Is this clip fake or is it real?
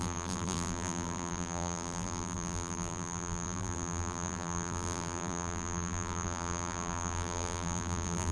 fake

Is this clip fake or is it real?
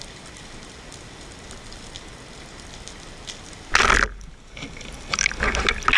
real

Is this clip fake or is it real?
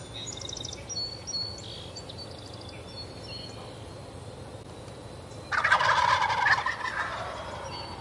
real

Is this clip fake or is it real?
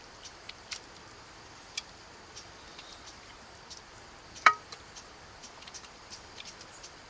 fake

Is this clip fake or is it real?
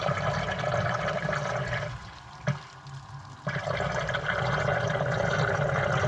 real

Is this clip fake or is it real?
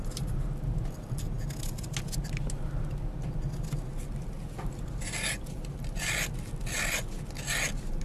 real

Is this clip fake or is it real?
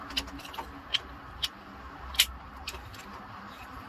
fake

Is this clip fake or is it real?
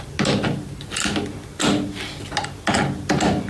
real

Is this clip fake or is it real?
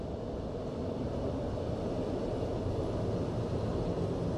real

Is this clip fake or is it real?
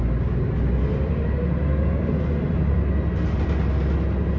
real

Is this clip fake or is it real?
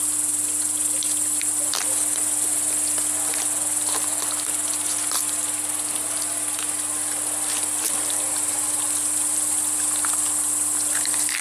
real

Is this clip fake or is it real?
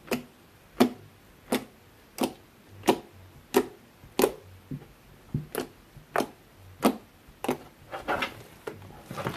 real